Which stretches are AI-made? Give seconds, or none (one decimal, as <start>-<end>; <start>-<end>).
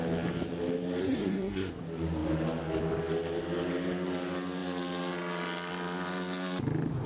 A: 1.0-1.8